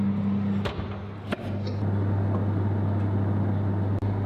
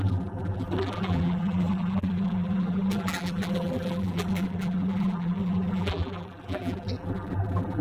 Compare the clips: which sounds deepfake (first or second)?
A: second